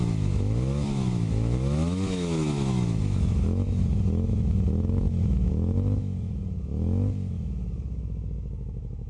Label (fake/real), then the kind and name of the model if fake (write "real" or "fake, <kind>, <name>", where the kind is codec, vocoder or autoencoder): fake, autoencoder, DAC-VAE